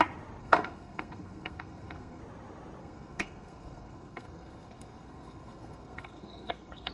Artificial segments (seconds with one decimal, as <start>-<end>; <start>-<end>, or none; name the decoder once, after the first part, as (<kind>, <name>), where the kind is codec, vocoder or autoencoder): 0.4-2.2 (codec, SNAC); 2.8-6.9

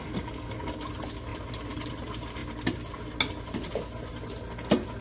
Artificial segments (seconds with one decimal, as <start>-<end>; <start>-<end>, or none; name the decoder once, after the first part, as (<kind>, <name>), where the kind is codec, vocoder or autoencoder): 0.0-0.9 (codec, DAC)

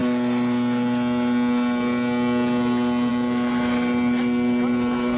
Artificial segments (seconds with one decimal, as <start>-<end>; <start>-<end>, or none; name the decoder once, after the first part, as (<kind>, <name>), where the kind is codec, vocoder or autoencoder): none

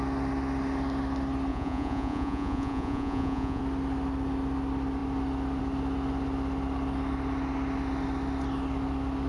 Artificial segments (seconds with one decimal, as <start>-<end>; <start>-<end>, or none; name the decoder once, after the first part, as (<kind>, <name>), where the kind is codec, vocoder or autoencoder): 1.5-3.6 (vocoder, Vocos)

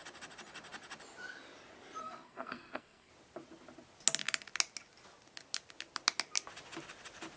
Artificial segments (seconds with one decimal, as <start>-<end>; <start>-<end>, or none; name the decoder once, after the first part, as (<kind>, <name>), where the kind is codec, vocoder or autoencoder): 2.0-3.1 (codec, SNAC)

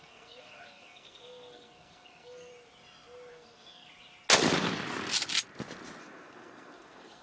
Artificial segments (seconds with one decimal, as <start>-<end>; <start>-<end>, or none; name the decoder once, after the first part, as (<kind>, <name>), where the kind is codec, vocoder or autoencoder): 0.0-2.5 (codec, SNAC); 3.3-3.9; 6.0-7.2

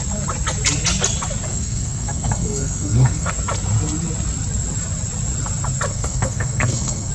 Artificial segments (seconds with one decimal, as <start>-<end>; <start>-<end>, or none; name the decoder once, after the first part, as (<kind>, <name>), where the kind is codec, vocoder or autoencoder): 1.5-3.3 (codec, SNAC); 5.9-7.1